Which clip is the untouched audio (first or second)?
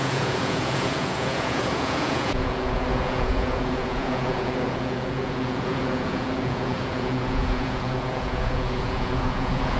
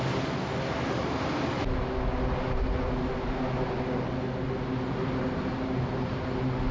second